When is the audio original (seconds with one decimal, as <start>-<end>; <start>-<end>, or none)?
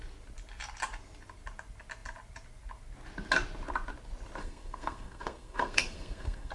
0.0-4.4